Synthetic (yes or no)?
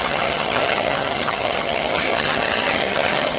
yes